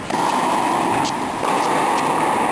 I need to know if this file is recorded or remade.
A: recorded